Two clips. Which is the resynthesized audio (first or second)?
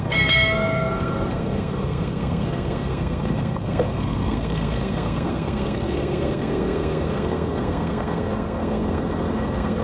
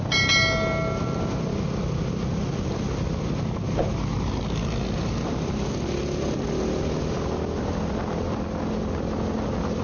first